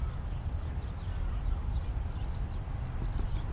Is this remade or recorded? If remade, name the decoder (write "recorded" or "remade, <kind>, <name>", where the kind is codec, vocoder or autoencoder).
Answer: recorded